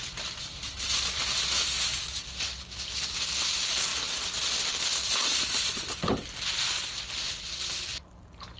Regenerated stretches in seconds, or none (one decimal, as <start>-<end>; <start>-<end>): none